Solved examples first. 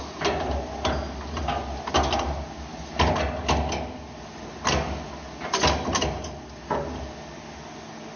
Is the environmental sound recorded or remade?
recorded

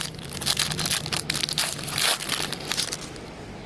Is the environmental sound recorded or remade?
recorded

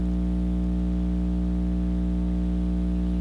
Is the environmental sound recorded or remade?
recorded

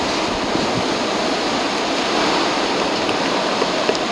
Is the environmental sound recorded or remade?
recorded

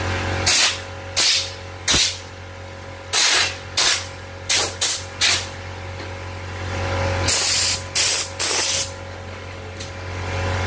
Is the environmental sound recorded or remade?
recorded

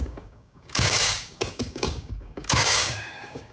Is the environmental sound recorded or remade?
remade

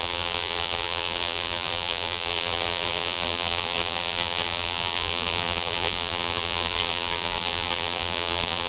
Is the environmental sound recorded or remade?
remade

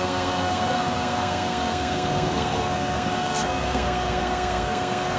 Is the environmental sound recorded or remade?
remade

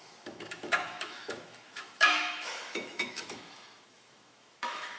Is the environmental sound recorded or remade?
remade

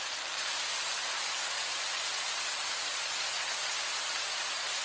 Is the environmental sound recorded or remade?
recorded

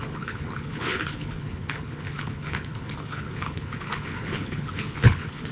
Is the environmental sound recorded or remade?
remade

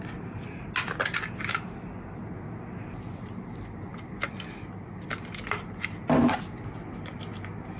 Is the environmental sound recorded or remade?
recorded